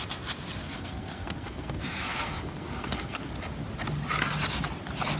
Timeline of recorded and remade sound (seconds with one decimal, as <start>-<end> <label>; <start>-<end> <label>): 0.0-0.6 recorded; 0.6-3.3 remade; 3.3-5.2 recorded